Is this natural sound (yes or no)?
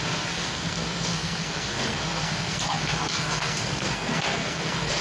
no